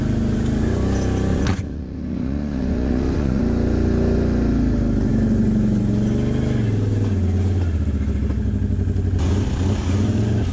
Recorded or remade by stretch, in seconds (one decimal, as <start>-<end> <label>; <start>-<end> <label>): 0.0-1.3 recorded; 1.3-3.4 remade; 3.4-10.5 recorded